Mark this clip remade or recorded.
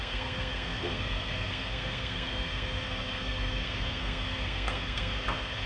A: remade